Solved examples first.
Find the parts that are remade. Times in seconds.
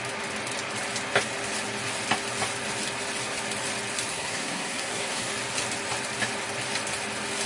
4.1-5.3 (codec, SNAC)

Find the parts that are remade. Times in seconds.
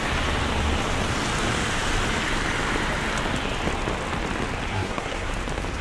4.7-5.3 (codec, SNAC)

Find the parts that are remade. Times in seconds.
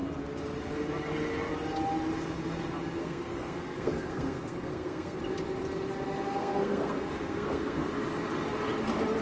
3.0-5.2 (codec, SNAC); 6.4-7.9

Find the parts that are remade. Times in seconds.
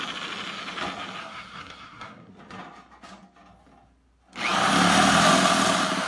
1.2-2.3 (codec, SNAC)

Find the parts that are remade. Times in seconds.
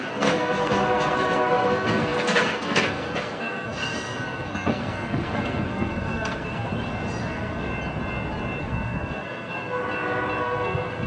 0.0-6.7 (codec, SNAC); 7.2-7.7; 8.6-9.8; 10.4-11.1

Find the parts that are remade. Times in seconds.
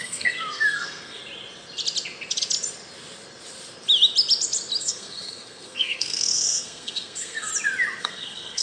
0.0-1.2 (codec, SNAC); 4.8-7.5; 8.0-8.6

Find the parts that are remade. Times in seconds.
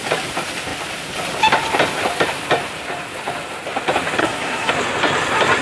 4.2-4.7 (codec, SNAC)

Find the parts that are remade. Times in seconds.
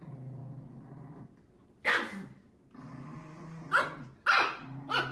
none